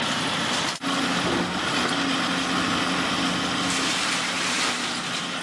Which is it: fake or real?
real